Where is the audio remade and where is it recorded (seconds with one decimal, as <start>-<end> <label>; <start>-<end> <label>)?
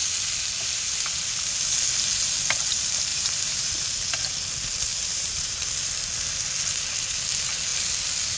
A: 0.0-3.1 recorded; 3.1-3.7 remade; 3.7-4.9 recorded; 4.9-5.9 remade; 5.9-8.4 recorded